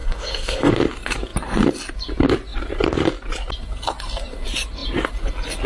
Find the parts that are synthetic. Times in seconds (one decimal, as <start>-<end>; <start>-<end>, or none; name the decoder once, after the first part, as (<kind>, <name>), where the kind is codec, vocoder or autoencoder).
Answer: 0.0-0.7 (codec, SNAC)